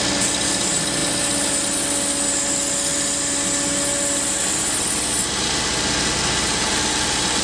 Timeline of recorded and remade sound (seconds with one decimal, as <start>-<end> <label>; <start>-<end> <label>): 0.0-7.4 recorded